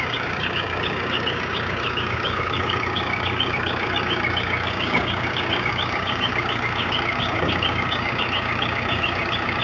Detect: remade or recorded remade